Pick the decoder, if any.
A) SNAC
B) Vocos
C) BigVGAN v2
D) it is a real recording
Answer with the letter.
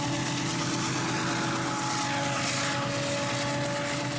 D